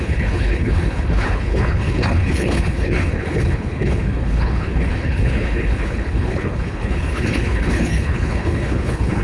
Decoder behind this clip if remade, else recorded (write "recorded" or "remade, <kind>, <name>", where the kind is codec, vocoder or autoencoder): remade, codec, HILCodec